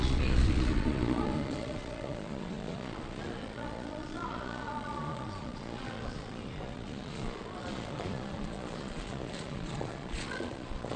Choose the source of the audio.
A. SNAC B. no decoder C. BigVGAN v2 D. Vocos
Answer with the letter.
D